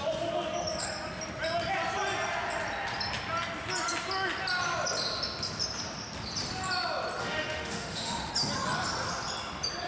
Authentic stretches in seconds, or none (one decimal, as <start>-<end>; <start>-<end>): 0.0-7.2; 8.3-9.9